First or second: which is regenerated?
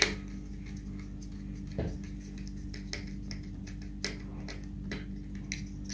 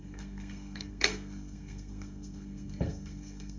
second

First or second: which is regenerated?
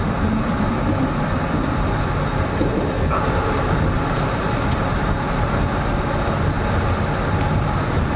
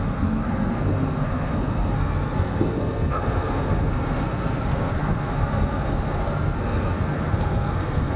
second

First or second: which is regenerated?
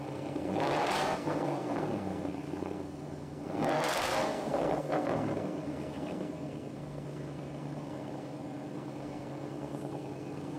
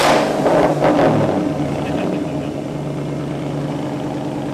first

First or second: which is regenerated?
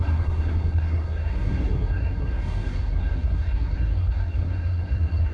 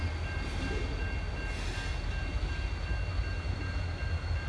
first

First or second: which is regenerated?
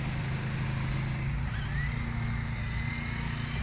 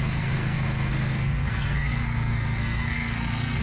second